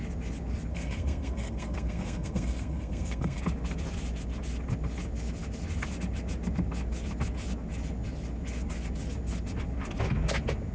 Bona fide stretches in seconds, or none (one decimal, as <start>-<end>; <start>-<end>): 0.0-0.7; 3.4-10.7